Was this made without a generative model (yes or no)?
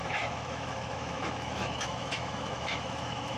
no